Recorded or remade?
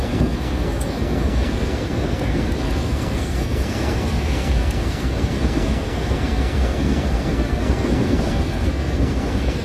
remade